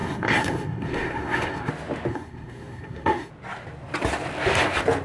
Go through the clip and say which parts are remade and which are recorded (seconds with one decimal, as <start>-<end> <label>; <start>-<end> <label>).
0.0-1.7 remade; 1.7-2.1 recorded; 2.1-3.3 remade; 3.3-5.0 recorded